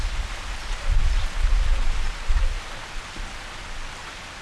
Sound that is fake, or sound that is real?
real